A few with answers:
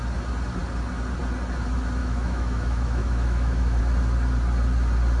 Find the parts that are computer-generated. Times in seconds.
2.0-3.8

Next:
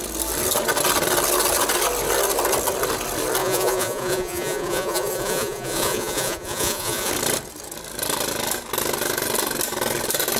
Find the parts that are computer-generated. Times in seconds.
3.4-7.1

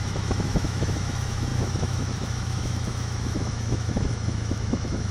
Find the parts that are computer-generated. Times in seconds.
0.0-5.1